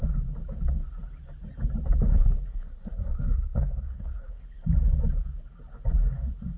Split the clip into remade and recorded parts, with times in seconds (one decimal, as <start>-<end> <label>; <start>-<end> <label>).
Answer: 0.0-2.1 recorded; 2.1-4.4 remade; 4.4-6.6 recorded